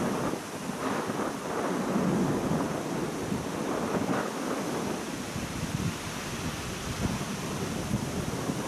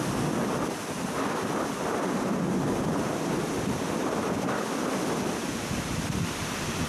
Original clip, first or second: first